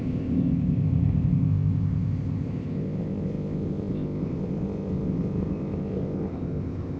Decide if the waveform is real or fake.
fake